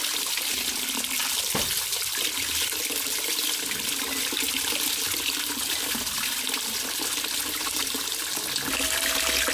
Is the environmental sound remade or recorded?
recorded